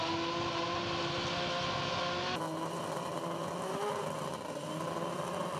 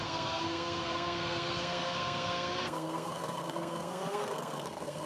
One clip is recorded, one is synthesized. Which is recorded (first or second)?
first